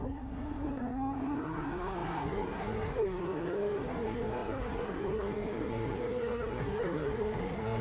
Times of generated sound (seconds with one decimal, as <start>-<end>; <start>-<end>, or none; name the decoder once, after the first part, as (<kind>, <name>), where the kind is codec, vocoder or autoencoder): 0.0-7.8 (codec, SNAC)